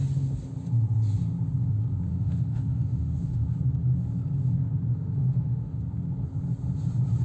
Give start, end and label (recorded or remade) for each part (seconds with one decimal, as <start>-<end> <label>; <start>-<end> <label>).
0.0-2.1 recorded; 2.1-3.6 remade; 3.6-4.9 recorded; 4.9-5.8 remade; 5.8-7.2 recorded